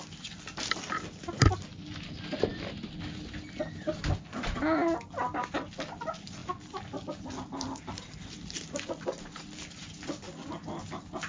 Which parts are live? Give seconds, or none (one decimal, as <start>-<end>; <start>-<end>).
0.0-11.3